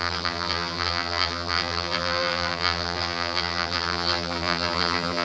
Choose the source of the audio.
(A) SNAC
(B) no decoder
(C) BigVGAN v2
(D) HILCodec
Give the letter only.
C